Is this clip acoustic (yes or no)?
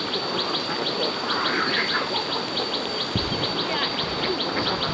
yes